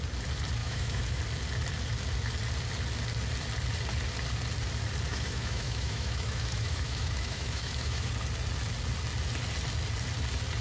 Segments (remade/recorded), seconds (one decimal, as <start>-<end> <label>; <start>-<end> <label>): 0.0-0.6 recorded; 0.6-1.2 remade; 1.2-5.1 recorded; 5.1-8.1 remade; 8.1-10.6 recorded